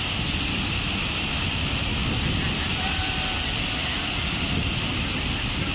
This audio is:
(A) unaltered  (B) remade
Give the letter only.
A